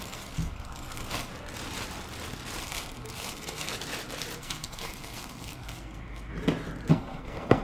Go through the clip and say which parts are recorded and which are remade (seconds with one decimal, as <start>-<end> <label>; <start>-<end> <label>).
0.0-1.3 remade; 1.3-2.6 recorded; 2.6-3.7 remade; 3.7-4.4 recorded; 4.4-6.3 remade; 6.3-6.9 recorded; 6.9-7.6 remade